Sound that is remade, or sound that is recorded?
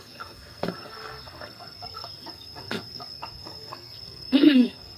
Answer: remade